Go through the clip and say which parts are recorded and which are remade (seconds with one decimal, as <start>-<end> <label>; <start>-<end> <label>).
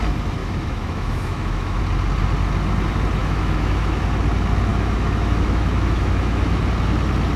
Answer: 0.0-0.4 recorded; 0.4-1.8 remade; 1.8-3.2 recorded; 3.2-4.0 remade; 4.0-4.7 recorded; 4.7-6.6 remade; 6.6-7.4 recorded